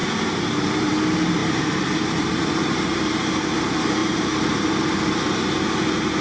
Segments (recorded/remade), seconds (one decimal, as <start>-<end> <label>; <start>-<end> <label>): 0.0-0.9 remade; 0.9-1.4 recorded; 1.4-3.4 remade; 3.4-4.0 recorded; 4.0-4.7 remade; 4.7-6.2 recorded